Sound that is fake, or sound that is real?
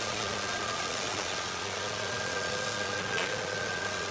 fake